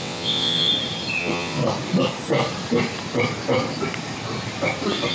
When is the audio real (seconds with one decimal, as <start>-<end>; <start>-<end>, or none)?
0.7-1.2; 1.6-5.1

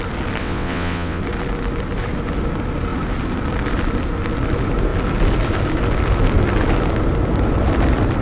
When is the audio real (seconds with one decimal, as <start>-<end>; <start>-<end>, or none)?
0.0-0.4; 1.2-8.2

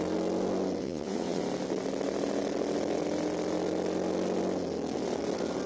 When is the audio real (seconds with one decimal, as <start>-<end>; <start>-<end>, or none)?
0.0-0.8; 1.4-5.7

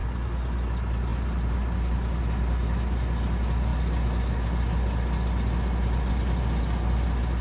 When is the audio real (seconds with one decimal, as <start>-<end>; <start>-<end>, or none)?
0.0-7.4